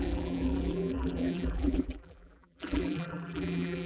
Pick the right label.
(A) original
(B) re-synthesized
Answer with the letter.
B